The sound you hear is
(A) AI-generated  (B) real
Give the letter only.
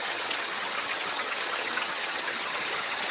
A